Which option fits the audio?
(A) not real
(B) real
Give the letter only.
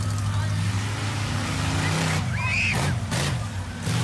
B